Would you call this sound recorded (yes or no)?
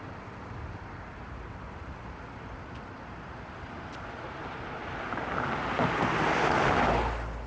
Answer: yes